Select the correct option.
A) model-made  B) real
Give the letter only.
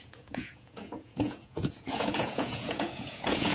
A